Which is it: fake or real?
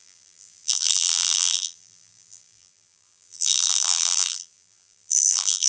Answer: fake